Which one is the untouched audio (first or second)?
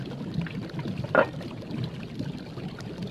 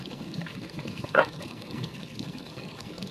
first